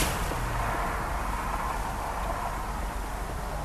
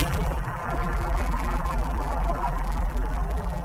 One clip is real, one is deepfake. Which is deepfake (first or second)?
second